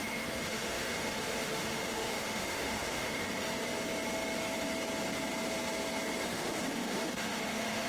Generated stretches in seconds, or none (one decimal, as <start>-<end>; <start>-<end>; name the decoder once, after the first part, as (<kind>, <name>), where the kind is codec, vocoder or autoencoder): 0.0-3.2 (autoencoder, DAC-VAE); 6.3-7.9